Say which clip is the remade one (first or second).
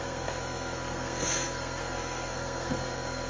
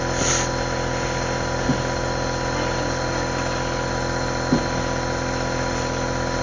first